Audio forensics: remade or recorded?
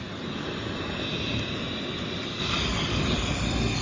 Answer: recorded